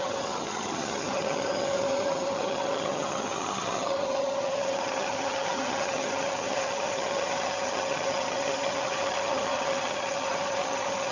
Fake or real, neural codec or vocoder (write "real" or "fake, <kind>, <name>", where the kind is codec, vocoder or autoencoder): fake, vocoder, HiFi-GAN